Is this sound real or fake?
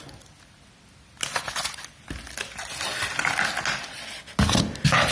real